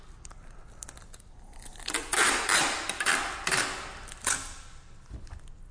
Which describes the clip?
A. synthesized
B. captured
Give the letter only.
B